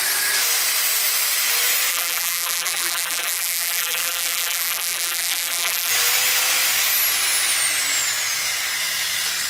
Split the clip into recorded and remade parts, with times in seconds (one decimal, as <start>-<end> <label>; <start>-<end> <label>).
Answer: 0.0-1.9 recorded; 1.9-5.9 remade; 5.9-9.5 recorded